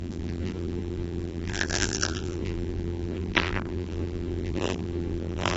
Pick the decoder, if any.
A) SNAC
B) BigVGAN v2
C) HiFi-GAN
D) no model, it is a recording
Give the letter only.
B